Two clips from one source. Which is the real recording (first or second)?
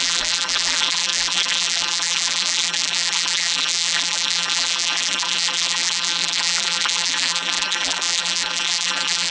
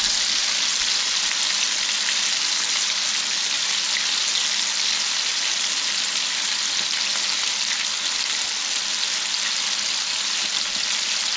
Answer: second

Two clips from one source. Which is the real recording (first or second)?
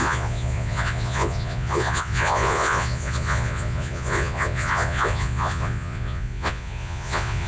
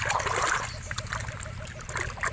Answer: second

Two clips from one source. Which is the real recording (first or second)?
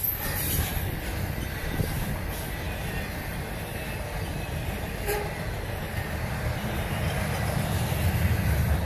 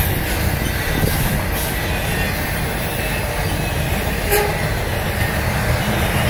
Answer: second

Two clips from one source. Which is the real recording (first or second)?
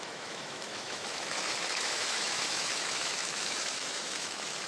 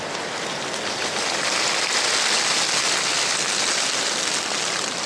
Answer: second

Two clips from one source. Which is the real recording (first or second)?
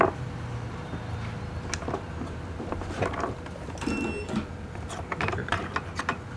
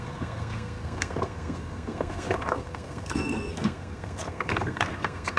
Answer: first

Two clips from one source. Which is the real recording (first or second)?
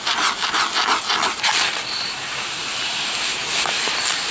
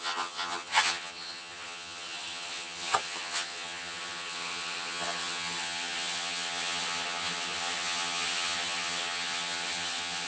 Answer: first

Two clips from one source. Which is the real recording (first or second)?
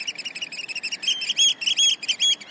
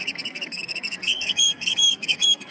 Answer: first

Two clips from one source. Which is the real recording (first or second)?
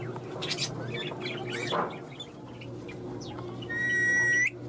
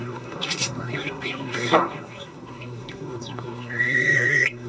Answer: first